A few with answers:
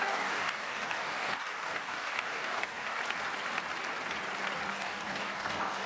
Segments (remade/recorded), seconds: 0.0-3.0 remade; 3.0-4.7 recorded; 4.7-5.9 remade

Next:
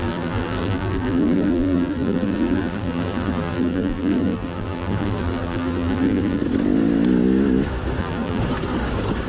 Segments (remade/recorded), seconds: 0.0-6.4 remade; 6.4-8.0 recorded; 8.0-8.4 remade; 8.4-9.3 recorded

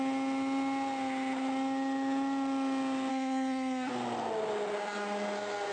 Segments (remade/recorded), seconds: 0.0-3.1 recorded; 3.1-3.9 remade; 3.9-5.7 recorded

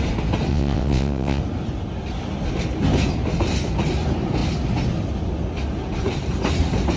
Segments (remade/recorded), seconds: 0.0-0.5 recorded; 0.5-1.4 remade; 1.4-7.0 recorded

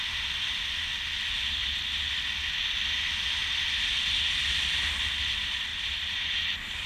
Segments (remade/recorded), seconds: 0.0-5.7 recorded; 5.7-6.4 remade; 6.4-6.9 recorded